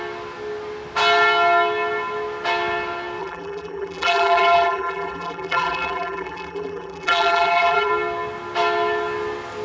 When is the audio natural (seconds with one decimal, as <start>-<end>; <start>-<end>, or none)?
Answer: 0.0-3.2; 7.9-9.6